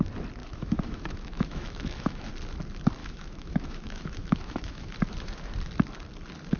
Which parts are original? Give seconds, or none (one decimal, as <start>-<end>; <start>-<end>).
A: 0.0-0.4; 2.3-3.0; 4.9-6.6